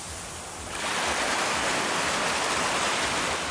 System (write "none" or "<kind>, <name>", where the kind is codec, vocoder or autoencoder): none